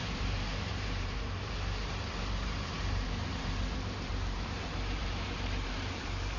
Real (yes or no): no